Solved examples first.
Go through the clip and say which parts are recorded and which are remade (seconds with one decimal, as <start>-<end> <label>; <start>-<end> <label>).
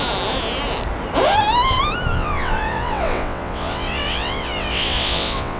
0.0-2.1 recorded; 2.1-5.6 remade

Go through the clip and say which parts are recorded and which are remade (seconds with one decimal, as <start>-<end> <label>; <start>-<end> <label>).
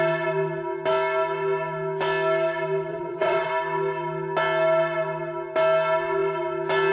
0.0-2.9 recorded; 2.9-3.5 remade; 3.5-6.9 recorded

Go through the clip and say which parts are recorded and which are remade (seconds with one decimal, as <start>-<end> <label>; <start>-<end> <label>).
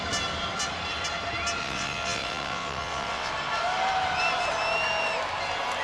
0.0-1.6 recorded; 1.6-3.3 remade; 3.3-5.8 recorded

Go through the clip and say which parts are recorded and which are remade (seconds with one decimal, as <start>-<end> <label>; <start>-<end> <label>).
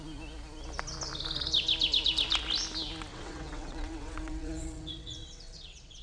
0.0-3.1 recorded; 3.1-6.0 remade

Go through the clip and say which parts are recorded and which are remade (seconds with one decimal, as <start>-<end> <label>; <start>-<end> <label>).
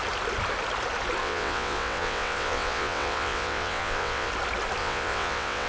0.0-1.2 recorded; 1.2-4.3 remade; 4.3-4.8 recorded; 4.8-5.7 remade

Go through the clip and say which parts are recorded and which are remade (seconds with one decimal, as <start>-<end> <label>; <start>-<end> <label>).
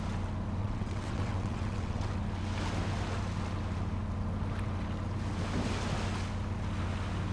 0.0-0.6 recorded; 0.6-2.1 remade; 2.1-7.3 recorded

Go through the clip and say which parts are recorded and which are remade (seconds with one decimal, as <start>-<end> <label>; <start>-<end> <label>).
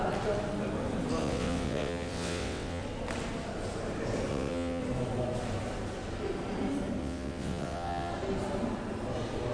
0.0-1.2 recorded; 1.2-2.8 remade; 2.8-4.3 recorded; 4.3-4.8 remade; 4.8-7.0 recorded; 7.0-8.1 remade; 8.1-9.5 recorded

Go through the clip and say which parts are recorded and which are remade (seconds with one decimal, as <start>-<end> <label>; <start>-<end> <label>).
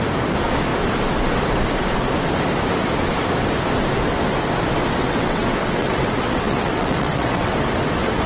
0.0-5.0 recorded; 5.0-7.5 remade; 7.5-8.3 recorded